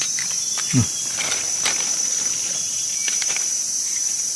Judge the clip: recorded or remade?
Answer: recorded